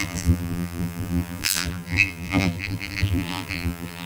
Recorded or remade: remade